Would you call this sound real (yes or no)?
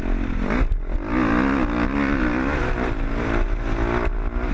yes